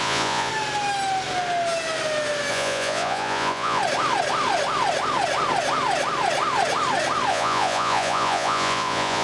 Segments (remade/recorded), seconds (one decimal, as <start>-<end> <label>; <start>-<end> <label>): 0.0-0.5 remade; 0.5-2.5 recorded; 2.5-3.8 remade; 3.8-7.3 recorded; 7.3-9.2 remade